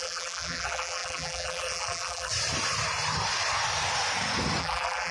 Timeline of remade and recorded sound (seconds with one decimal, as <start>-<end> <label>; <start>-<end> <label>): 0.0-2.3 remade; 2.3-4.6 recorded; 4.6-5.1 remade